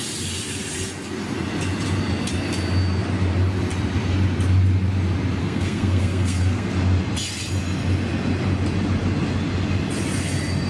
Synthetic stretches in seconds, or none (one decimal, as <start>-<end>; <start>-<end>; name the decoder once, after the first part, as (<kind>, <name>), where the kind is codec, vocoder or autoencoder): 5.4-6.7 (codec, SNAC)